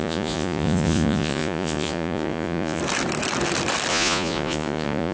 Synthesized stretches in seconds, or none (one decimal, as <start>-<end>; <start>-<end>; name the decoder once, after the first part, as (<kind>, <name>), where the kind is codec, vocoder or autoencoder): 0.0-2.8 (vocoder, Vocos); 3.9-5.1